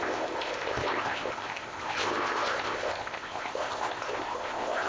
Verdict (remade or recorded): remade